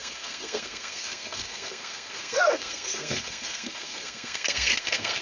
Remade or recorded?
remade